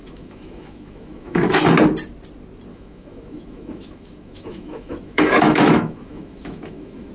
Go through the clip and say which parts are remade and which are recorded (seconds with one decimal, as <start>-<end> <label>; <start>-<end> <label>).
0.0-1.6 remade; 1.6-2.7 recorded; 2.7-7.1 remade